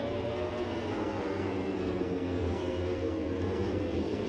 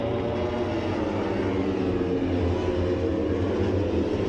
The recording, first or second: second